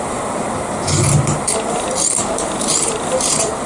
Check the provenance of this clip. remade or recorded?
remade